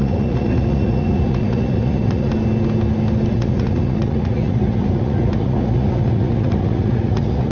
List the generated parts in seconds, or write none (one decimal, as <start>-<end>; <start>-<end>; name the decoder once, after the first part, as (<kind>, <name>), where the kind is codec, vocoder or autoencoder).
0.0-2.3 (vocoder, Vocos); 3.3-7.5